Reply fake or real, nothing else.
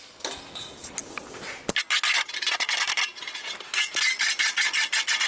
real